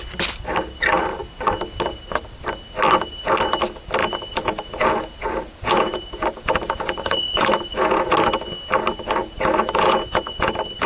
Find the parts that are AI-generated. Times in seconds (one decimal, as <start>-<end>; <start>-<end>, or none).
4.0-8.1; 9.2-10.9